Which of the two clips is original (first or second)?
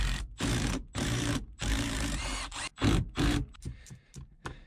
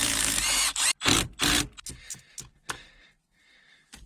second